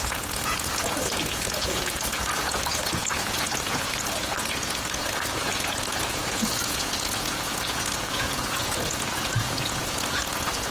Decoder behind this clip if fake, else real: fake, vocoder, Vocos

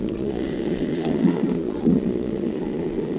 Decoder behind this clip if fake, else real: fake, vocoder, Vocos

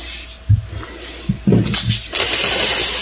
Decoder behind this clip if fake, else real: real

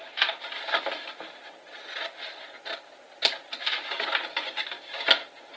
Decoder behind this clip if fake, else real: real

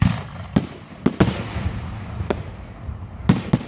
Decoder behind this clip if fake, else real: real